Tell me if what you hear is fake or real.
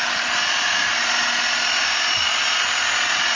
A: real